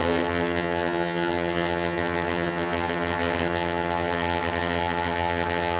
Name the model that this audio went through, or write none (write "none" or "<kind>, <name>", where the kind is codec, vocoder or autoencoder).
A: vocoder, HiFi-GAN